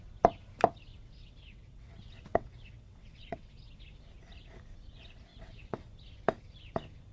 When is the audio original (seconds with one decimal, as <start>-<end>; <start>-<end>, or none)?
0.0-0.9; 3.8-5.3; 5.9-7.1